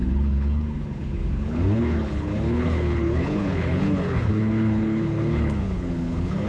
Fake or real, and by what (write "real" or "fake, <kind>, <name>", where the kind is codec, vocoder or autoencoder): fake, codec, HILCodec